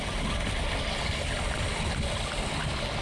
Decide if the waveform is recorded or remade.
recorded